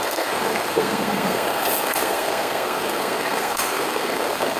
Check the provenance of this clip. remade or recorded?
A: remade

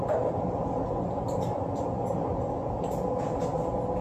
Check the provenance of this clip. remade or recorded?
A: recorded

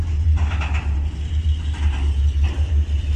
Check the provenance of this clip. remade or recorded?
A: recorded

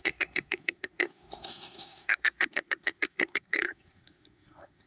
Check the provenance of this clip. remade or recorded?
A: remade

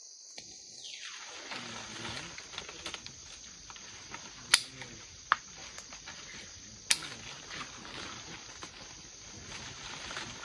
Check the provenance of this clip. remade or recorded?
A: recorded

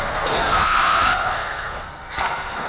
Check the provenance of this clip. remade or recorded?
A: remade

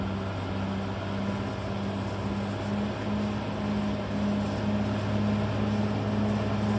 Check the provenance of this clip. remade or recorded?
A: recorded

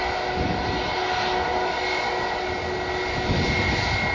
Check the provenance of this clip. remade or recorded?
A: recorded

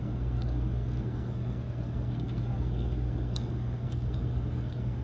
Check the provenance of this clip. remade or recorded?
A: remade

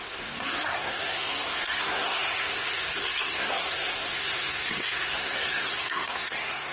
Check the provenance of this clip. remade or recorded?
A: remade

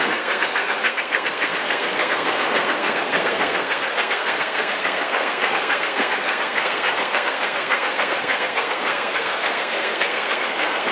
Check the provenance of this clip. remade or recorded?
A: remade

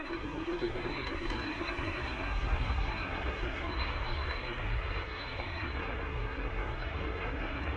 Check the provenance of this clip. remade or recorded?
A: remade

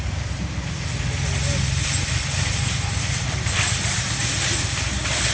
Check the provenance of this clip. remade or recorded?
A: recorded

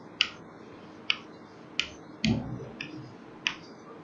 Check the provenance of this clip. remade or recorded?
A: recorded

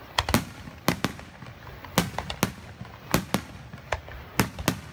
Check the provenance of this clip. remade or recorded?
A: recorded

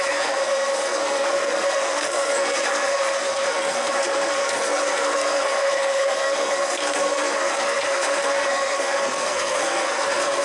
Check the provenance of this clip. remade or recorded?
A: remade